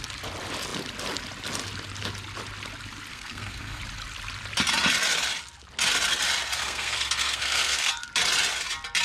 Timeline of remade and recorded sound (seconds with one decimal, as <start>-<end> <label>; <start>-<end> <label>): 0.0-3.1 recorded; 3.1-3.8 remade; 3.8-6.6 recorded; 6.6-7.9 remade; 7.9-9.0 recorded